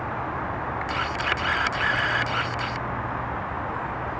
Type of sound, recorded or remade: recorded